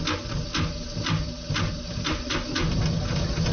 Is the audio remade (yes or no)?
no